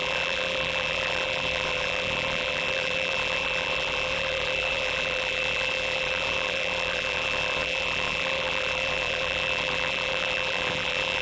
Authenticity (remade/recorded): remade